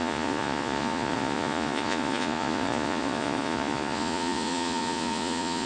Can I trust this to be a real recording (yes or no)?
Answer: no